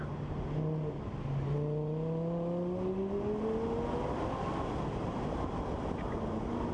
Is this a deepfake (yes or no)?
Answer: no